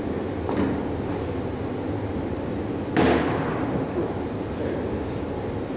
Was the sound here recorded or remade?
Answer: recorded